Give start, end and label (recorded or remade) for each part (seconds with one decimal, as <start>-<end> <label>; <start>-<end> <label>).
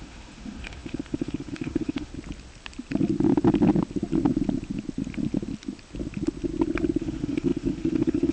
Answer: 0.0-2.1 remade; 2.1-7.0 recorded; 7.0-8.3 remade